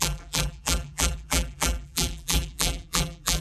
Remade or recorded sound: remade